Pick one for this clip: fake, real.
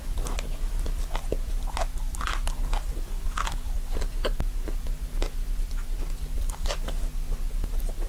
real